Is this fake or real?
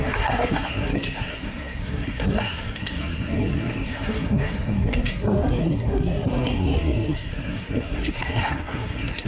fake